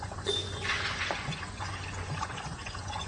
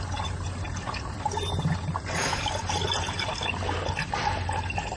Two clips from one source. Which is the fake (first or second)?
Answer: first